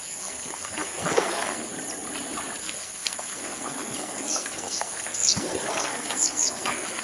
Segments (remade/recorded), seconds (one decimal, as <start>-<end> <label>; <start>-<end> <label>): 0.0-1.7 remade; 1.7-2.6 recorded; 2.6-7.0 remade